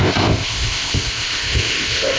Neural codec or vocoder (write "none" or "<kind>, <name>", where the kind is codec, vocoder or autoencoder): codec, ZipCodec